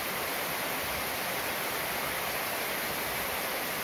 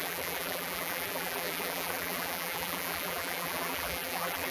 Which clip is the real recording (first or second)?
first